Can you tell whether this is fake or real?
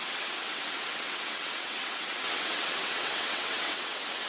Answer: fake